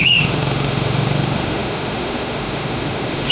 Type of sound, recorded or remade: remade